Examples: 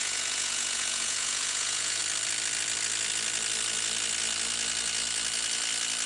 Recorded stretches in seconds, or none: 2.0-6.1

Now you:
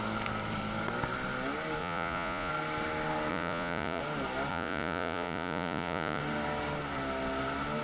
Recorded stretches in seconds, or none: 0.0-1.8; 2.5-3.3; 4.0-4.5; 6.2-7.8

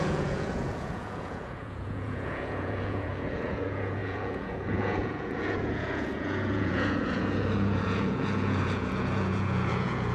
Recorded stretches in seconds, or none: none

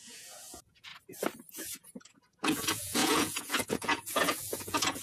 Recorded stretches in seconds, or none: 0.9-1.5